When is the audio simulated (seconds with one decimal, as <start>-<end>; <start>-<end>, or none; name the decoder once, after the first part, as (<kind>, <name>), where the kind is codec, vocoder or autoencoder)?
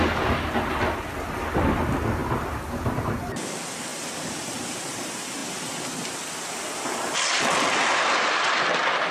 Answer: 3.9-4.6 (vocoder, BigVGAN v2)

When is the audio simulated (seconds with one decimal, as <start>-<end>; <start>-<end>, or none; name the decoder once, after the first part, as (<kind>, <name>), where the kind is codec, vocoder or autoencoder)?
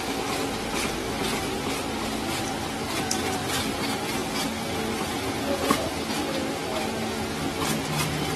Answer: none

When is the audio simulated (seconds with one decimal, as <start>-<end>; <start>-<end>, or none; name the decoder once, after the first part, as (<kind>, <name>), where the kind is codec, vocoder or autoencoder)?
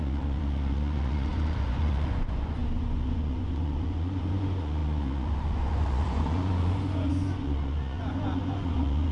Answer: 0.0-9.1 (vocoder, Vocos)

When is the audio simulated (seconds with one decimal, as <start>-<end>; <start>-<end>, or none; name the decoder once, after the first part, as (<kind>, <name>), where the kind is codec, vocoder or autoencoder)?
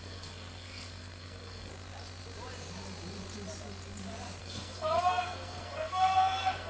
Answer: 0.0-1.7 (codec, SNAC); 4.4-6.7